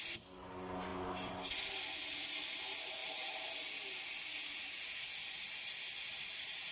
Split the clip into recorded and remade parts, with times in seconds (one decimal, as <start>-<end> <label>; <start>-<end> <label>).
0.0-6.7 recorded